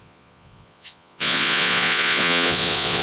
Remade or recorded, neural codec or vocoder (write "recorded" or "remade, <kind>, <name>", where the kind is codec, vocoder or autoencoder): remade, vocoder, Vocos